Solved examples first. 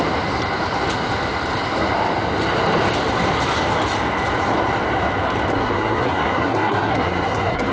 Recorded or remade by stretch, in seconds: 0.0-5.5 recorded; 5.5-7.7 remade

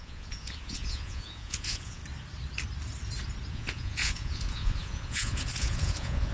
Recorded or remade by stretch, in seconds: 0.0-2.0 remade; 2.0-3.5 recorded; 3.5-6.3 remade

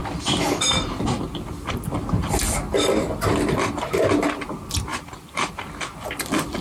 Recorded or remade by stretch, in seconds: 0.0-4.9 recorded; 4.9-5.5 remade; 5.5-6.6 recorded